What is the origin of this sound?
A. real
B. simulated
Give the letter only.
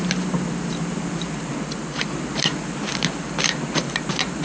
B